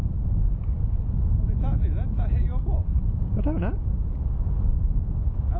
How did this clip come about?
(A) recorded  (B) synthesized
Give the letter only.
A